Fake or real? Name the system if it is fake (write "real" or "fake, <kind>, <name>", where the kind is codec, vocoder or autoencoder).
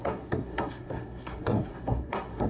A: fake, codec, SNAC